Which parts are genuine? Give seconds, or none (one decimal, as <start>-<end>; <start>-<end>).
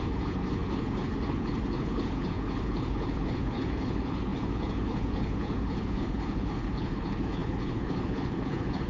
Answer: none